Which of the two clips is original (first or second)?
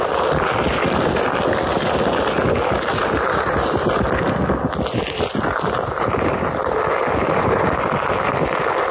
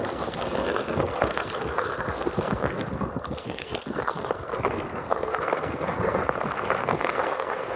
first